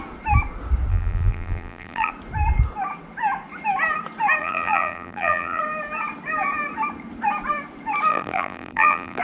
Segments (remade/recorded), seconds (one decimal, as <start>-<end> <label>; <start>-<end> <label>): 0.0-0.9 recorded; 0.9-2.1 remade; 2.1-4.4 recorded; 4.4-5.6 remade; 5.6-8.1 recorded; 8.1-9.2 remade